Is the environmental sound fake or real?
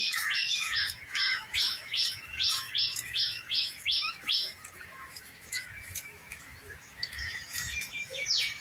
fake